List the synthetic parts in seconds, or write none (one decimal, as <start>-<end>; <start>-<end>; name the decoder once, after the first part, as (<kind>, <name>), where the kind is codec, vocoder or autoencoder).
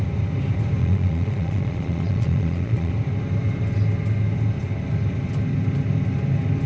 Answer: 0.8-2.9 (vocoder, Vocos)